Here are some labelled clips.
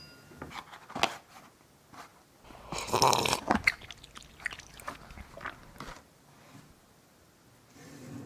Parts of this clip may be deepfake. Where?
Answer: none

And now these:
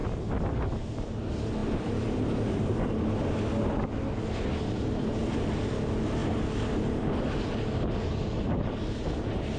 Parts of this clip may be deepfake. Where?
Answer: 1.6-2.9 (vocoder, BigVGAN v2)

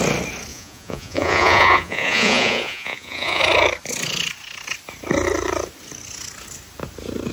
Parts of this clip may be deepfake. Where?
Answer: 0.5-3.4 (vocoder, Vocos)

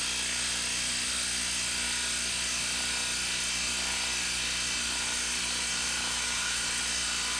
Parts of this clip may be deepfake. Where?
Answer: 6.0-6.6 (autoencoder, DAC-VAE)

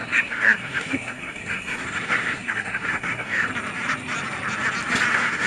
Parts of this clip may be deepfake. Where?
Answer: 0.0-3.5 (codec, SNAC); 5.1-5.5

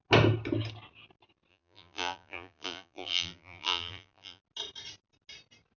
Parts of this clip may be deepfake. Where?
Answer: 1.5-4.4 (vocoder, BigVGAN v2)

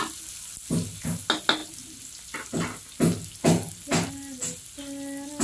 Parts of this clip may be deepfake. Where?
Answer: none

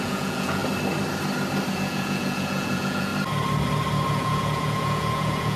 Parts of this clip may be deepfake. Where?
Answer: 0.0-0.6 (vocoder, Vocos); 1.7-3.1; 4.1-5.6